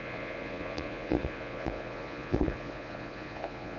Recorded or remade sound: remade